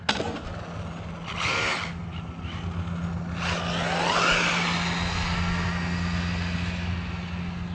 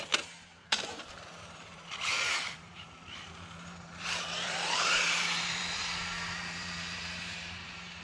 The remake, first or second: second